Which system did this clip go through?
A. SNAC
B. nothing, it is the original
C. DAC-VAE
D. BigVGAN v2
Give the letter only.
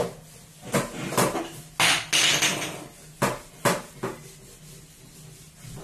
B